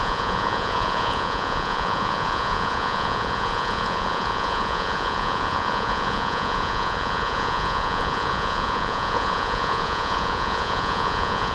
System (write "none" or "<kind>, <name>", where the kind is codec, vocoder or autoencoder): vocoder, Vocos